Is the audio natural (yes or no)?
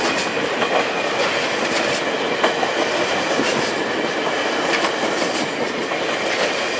yes